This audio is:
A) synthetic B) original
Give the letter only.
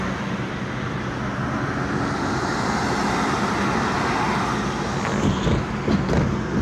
B